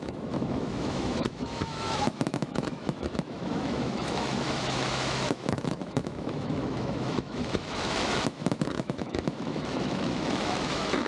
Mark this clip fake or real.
fake